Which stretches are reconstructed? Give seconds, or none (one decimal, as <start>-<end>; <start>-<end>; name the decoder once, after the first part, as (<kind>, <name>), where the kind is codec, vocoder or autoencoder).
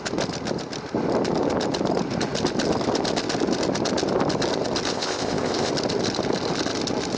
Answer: 4.9-5.7 (codec, ZipCodec)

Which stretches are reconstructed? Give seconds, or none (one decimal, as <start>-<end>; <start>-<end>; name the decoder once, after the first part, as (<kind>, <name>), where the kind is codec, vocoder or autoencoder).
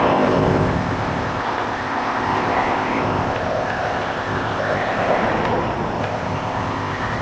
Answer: 0.0-5.2 (codec, ZipCodec); 6.0-7.2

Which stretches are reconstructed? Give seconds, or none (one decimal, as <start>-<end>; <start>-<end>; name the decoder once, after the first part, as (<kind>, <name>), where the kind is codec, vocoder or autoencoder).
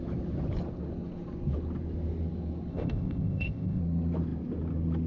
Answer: 2.7-3.8 (codec, ZipCodec)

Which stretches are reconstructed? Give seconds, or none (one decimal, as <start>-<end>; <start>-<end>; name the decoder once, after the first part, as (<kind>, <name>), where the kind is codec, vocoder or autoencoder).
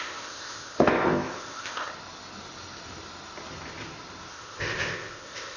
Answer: 0.0-1.9 (codec, ZipCodec); 4.3-5.6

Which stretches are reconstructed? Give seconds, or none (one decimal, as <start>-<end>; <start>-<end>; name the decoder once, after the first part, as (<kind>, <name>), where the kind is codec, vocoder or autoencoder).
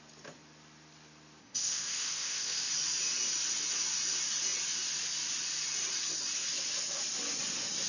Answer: 1.4-2.7 (codec, ZipCodec)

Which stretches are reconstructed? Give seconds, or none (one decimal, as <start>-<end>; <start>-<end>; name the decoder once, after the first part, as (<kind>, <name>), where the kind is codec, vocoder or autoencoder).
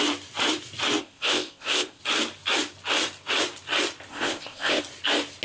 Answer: 1.0-2.0 (codec, ZipCodec); 4.1-4.8